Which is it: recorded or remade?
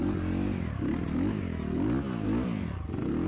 recorded